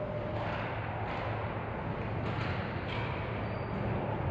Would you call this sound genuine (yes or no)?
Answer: yes